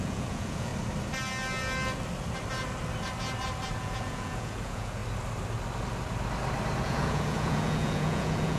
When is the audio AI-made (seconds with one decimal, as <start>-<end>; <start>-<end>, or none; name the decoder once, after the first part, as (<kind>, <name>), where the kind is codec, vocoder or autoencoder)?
0.0-0.7 (vocoder, Vocos); 3.8-5.0; 6.8-8.6